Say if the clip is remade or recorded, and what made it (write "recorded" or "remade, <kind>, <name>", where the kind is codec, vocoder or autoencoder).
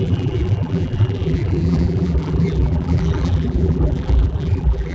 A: remade, vocoder, BigVGAN v2